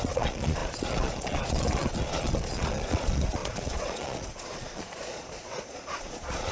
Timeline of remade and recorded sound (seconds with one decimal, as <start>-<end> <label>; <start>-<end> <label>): 0.0-6.5 remade